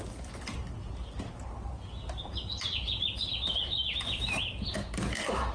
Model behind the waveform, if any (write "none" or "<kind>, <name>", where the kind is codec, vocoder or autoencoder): none